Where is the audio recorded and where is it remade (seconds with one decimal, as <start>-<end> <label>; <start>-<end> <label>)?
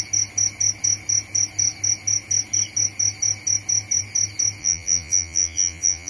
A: 0.0-4.6 recorded; 4.6-6.1 remade